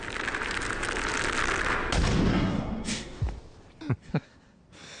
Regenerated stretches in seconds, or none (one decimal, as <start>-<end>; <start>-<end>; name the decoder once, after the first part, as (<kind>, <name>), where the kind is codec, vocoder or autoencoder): 2.3-3.2 (codec, SNAC); 4.0-4.6